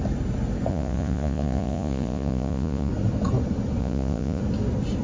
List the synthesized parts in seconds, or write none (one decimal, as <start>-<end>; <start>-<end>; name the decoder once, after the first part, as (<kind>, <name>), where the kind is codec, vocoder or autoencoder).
0.7-2.9 (vocoder, Vocos); 3.8-4.4